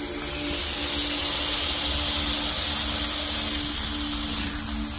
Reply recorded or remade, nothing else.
recorded